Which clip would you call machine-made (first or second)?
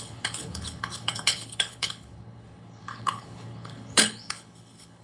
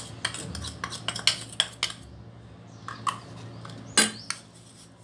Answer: first